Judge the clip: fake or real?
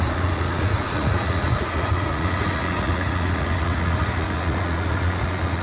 fake